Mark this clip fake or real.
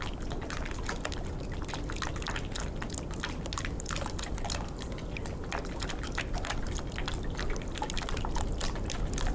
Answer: real